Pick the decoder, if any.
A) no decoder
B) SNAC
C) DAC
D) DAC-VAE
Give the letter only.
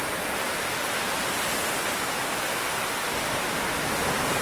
A